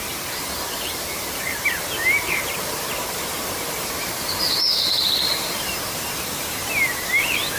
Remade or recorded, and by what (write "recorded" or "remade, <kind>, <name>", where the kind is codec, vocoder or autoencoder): remade, vocoder, BigVGAN v2